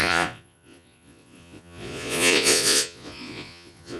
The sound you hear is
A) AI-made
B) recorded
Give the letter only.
A